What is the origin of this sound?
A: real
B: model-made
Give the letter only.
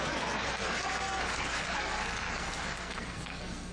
B